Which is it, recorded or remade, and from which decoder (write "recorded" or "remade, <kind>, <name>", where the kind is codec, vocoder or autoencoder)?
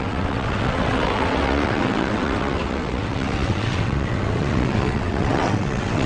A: remade, vocoder, WaveNeXt